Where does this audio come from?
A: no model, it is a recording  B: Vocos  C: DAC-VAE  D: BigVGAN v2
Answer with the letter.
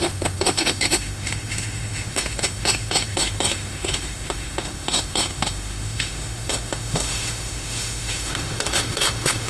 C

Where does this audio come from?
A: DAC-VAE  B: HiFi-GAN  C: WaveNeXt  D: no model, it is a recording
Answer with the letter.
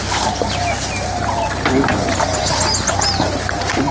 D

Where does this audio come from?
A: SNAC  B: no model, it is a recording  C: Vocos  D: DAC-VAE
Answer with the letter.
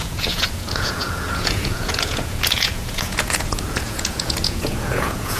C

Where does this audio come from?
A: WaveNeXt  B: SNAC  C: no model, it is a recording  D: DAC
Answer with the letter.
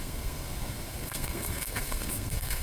B